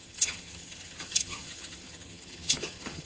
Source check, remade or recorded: remade